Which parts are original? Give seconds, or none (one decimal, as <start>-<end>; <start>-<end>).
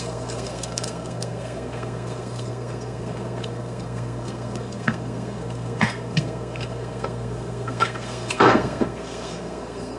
none